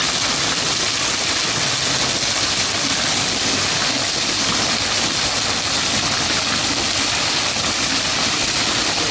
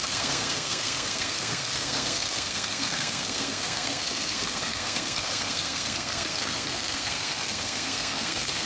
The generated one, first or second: second